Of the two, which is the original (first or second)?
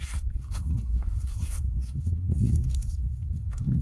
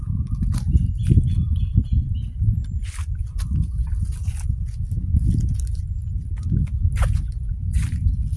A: second